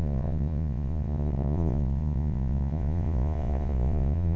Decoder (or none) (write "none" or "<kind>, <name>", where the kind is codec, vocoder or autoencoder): vocoder, Vocos